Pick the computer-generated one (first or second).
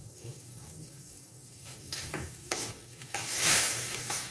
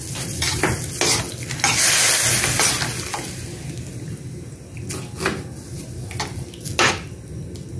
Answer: first